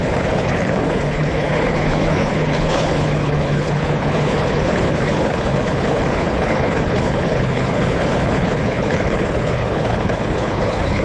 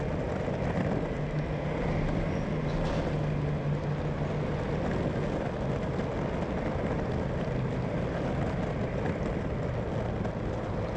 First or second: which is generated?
first